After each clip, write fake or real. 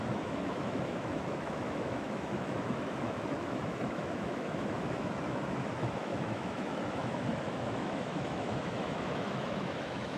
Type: fake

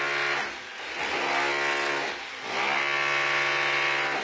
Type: real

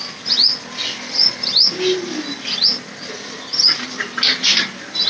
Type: real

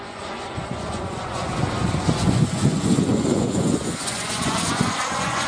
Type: fake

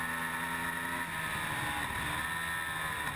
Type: real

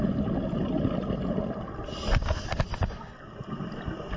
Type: real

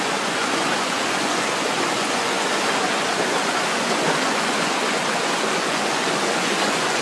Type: fake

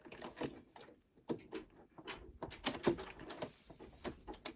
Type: real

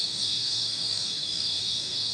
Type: fake